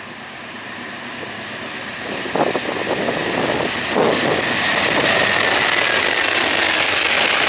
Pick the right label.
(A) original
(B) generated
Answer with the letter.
A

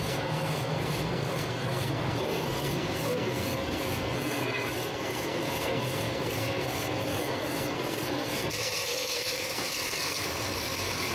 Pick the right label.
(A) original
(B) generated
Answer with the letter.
B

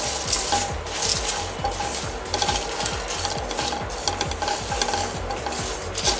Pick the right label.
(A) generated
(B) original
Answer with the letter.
B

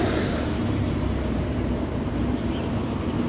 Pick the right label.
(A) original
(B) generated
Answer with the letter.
B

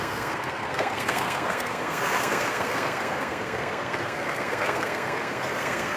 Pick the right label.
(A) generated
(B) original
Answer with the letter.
A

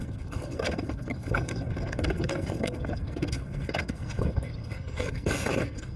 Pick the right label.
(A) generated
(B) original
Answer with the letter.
A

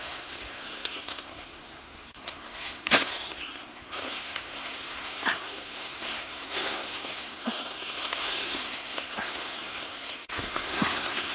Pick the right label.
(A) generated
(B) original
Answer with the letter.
A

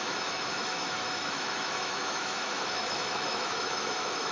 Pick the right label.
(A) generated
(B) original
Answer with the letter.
A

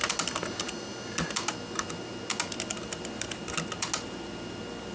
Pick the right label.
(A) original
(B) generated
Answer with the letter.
A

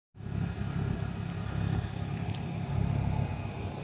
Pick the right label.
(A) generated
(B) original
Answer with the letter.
B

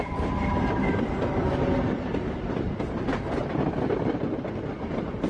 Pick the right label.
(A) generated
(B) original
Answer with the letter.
A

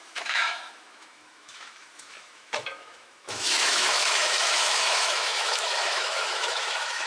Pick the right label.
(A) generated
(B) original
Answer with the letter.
A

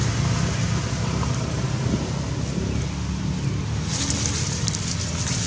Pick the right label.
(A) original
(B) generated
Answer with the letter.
A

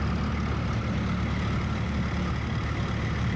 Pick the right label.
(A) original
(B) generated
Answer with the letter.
A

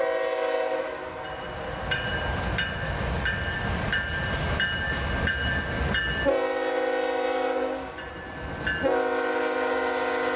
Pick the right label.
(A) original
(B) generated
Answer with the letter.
A